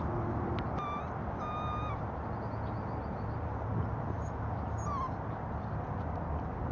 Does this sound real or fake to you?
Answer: real